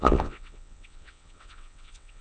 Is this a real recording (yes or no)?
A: no